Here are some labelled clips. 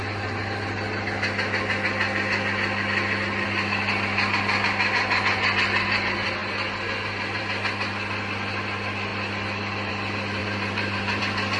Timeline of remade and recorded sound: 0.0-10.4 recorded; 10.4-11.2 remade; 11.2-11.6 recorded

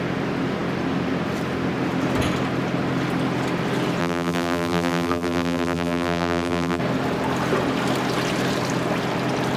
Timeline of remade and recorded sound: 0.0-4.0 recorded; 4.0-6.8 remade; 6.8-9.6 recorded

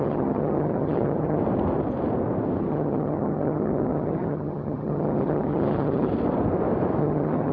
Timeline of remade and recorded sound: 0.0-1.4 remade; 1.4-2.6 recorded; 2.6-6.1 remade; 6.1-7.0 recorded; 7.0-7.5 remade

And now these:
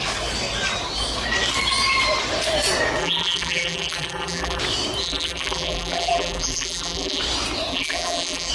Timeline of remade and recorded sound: 0.0-3.0 recorded; 3.0-4.6 remade; 4.6-5.0 recorded; 5.0-7.2 remade; 7.2-7.7 recorded; 7.7-8.5 remade

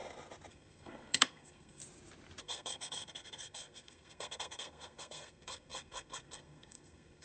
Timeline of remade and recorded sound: 0.0-0.5 recorded; 0.5-1.8 remade; 1.8-2.4 recorded; 2.4-7.2 remade

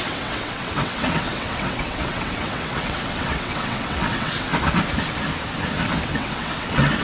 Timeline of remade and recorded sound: 0.0-4.5 remade; 4.5-6.1 recorded; 6.1-7.0 remade

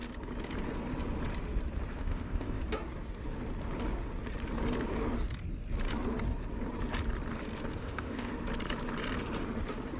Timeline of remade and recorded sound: 0.0-2.0 recorded; 2.0-2.6 remade; 2.6-7.8 recorded; 7.8-8.3 remade; 8.3-10.0 recorded

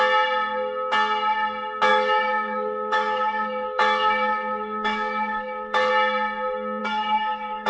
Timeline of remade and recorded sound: 0.0-1.9 recorded; 1.9-5.9 remade; 5.9-6.8 recorded; 6.8-7.7 remade